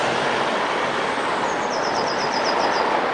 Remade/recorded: recorded